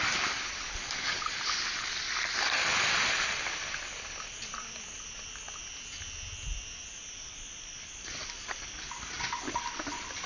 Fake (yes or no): no